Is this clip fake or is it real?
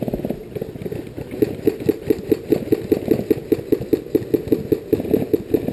real